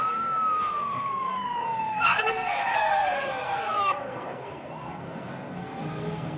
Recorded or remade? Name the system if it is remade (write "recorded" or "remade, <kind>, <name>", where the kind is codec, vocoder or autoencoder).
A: remade, codec, SNAC